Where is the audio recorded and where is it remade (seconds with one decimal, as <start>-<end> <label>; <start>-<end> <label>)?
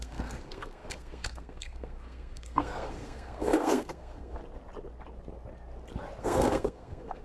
0.0-4.4 remade; 4.4-6.2 recorded; 6.2-7.2 remade